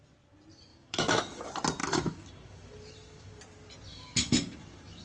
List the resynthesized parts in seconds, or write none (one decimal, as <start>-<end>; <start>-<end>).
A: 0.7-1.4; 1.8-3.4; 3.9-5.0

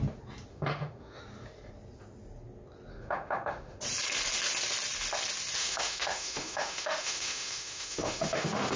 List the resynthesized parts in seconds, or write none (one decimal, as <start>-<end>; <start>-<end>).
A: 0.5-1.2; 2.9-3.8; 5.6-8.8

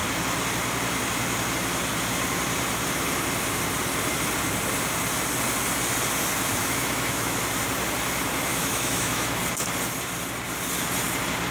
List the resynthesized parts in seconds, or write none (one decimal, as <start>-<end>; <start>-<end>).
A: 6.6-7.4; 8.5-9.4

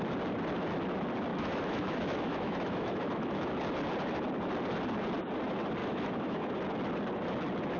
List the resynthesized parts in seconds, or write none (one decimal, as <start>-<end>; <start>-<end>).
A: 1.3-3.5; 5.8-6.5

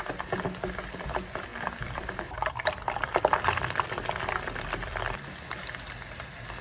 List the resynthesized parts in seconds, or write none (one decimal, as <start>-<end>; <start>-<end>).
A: none

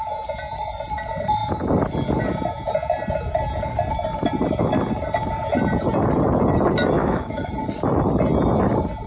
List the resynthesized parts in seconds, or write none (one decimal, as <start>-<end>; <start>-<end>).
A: 7.0-7.5

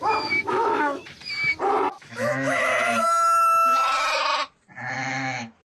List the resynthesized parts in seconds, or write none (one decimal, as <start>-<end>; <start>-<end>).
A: 0.0-1.0; 1.9-2.7; 4.9-5.7

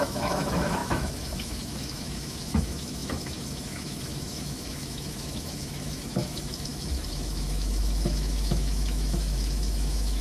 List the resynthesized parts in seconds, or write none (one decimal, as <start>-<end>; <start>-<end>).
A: 0.0-10.2